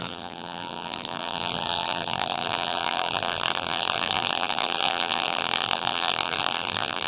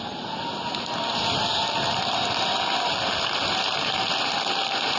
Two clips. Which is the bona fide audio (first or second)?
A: second